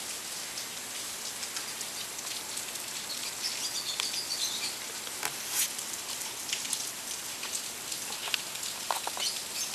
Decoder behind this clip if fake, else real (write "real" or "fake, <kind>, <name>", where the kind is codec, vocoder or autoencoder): real